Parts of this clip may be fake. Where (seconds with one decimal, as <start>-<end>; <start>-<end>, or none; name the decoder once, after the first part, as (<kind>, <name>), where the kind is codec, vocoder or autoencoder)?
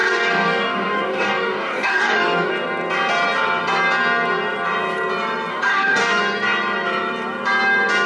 0.0-2.5 (codec, DAC); 5.5-6.2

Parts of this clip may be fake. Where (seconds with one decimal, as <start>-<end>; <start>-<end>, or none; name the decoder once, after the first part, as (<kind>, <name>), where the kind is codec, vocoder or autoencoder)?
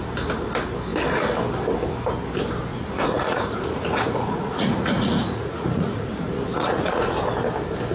2.7-7.2 (vocoder, Vocos)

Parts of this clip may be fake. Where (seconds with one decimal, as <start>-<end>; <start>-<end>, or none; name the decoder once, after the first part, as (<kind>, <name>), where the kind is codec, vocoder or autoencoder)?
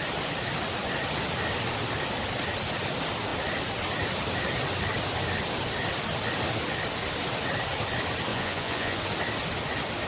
8.3-9.0 (vocoder, Vocos)